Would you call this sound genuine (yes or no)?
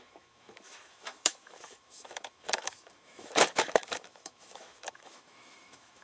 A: no